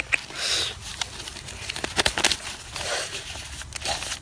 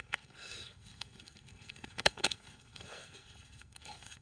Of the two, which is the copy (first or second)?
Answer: second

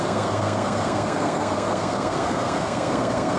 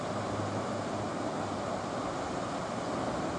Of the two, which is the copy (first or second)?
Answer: first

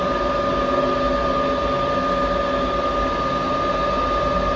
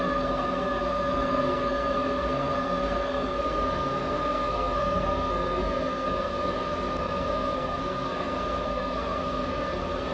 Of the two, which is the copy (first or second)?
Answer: second